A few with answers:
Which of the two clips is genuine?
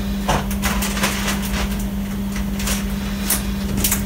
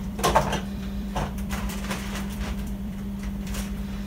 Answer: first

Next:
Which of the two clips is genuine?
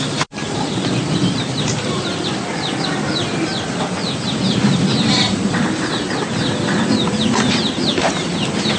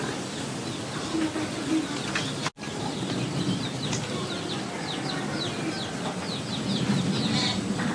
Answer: second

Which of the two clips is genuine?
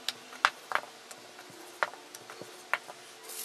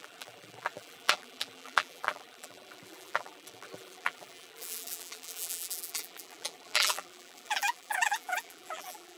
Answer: first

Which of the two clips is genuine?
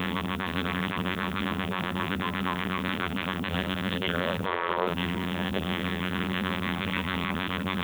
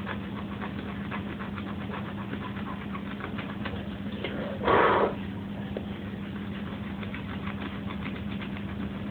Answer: second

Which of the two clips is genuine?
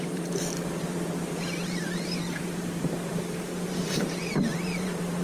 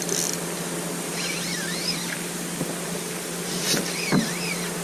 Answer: second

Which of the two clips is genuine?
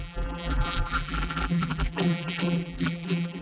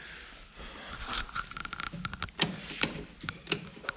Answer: second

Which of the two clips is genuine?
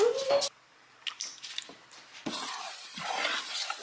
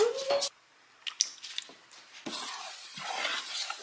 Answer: second